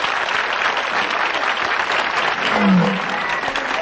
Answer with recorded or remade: recorded